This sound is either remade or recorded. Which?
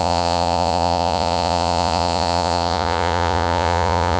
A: remade